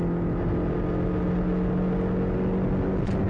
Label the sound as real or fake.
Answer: real